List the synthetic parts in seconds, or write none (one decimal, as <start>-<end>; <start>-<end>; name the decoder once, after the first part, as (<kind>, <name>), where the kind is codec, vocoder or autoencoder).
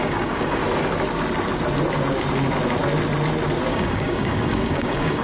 0.0-0.6 (codec, DAC); 3.7-5.2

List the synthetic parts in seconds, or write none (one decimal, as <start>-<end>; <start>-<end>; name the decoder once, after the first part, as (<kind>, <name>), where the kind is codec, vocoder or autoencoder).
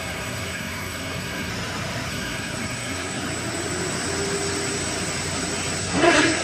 0.0-1.5 (codec, SNAC); 2.1-3.2; 5.8-6.4